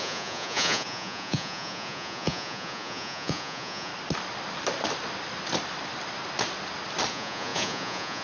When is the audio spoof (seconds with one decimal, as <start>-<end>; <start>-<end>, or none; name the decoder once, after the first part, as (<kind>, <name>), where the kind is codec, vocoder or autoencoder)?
0.0-3.9 (vocoder, Vocos); 7.1-8.2